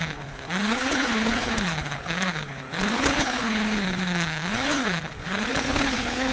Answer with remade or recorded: remade